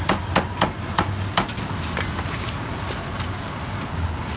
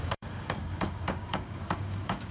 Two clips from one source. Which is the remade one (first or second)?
second